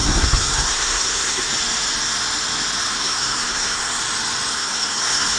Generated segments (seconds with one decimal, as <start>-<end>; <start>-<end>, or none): 0.0-1.5; 2.9-4.0; 4.5-5.4